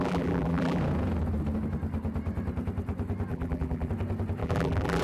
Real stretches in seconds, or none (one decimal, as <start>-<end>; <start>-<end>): 0.8-3.3; 3.9-4.4